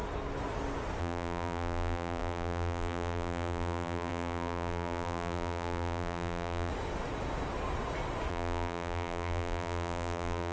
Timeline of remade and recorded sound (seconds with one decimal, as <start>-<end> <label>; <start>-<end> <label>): 0.0-1.0 recorded; 1.0-6.7 remade; 6.7-8.3 recorded; 8.3-10.5 remade